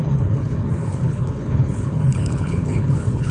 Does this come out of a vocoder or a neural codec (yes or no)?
yes